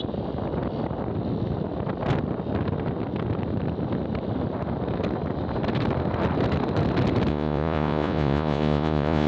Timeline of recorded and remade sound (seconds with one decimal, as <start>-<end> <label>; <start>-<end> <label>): 0.0-7.3 recorded; 7.3-9.3 remade